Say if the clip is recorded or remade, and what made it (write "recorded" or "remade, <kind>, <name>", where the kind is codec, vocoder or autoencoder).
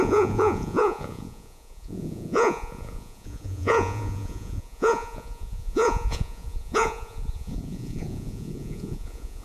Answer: remade, vocoder, Vocos